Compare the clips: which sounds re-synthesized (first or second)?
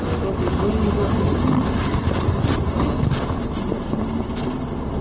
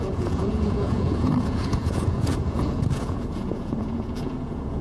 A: second